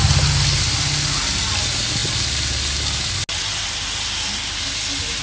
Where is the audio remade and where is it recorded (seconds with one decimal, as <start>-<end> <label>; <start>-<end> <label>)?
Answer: 0.0-5.2 recorded